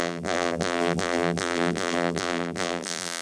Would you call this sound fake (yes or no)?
yes